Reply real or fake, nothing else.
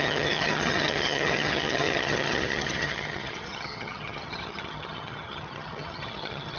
fake